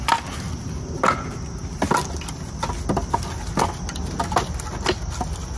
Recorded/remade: recorded